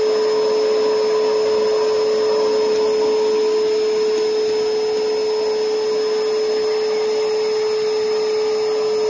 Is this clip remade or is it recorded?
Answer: recorded